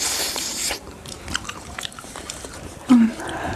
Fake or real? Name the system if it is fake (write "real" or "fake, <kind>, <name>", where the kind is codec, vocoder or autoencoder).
fake, vocoder, BigVGAN v2